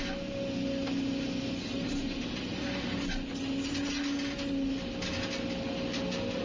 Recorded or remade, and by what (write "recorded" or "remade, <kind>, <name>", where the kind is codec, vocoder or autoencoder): recorded